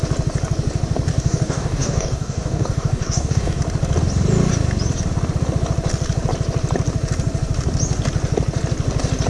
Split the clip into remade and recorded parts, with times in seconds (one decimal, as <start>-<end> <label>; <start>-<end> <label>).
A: 0.0-1.1 recorded; 1.1-3.6 remade; 3.6-9.3 recorded